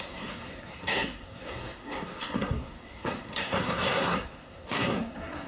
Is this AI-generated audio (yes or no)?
yes